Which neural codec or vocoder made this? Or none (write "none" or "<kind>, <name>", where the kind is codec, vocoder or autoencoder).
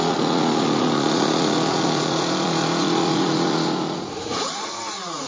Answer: vocoder, Vocos